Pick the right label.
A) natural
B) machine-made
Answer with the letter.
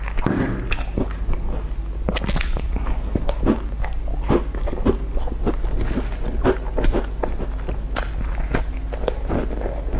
A